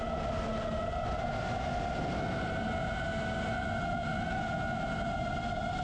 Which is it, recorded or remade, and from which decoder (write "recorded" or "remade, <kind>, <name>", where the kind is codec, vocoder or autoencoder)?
recorded